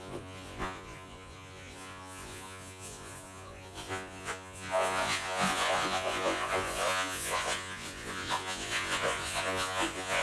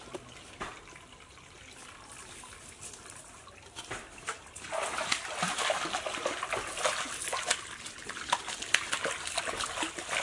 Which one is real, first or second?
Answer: second